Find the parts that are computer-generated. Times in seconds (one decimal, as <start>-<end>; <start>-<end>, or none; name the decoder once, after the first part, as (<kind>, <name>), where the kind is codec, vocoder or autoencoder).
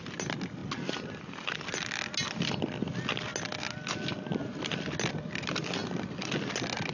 none